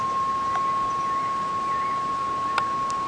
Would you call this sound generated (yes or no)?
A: no